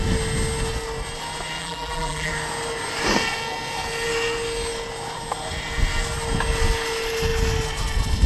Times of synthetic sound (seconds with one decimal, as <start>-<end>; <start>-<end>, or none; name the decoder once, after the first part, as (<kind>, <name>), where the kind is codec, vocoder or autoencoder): 1.6-2.3 (vocoder, BigVGAN v2)